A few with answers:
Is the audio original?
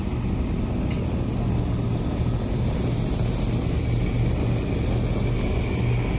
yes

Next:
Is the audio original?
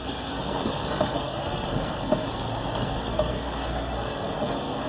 no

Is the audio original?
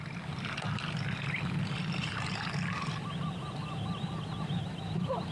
yes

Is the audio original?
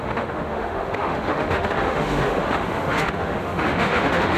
no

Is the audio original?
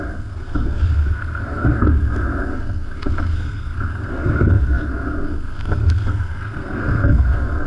no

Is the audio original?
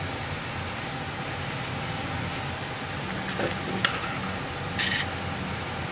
yes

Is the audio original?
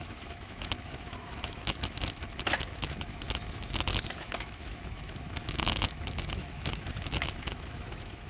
no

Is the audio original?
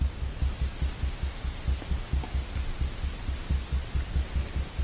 yes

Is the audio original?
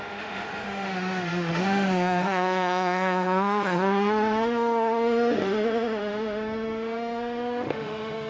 no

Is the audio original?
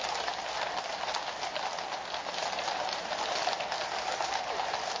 yes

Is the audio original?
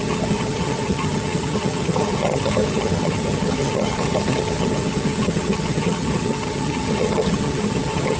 no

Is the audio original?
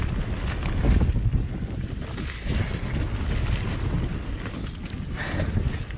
yes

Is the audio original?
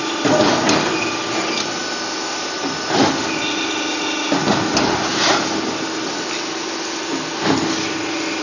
yes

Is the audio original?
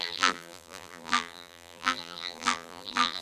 no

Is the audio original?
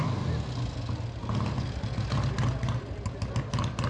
yes